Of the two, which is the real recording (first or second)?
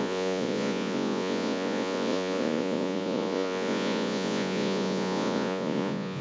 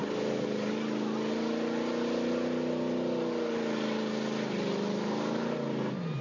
second